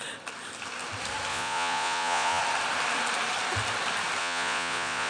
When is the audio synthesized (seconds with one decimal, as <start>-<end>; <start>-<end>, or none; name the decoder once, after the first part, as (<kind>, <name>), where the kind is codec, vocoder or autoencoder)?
1.3-2.4 (vocoder, Vocos); 4.2-5.1